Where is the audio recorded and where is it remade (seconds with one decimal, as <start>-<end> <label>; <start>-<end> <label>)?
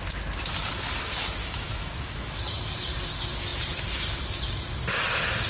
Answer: 0.0-1.4 recorded; 1.4-2.4 remade; 2.4-5.5 recorded